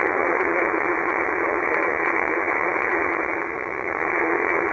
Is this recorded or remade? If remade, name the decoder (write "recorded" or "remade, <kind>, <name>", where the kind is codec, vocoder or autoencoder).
remade, vocoder, Vocos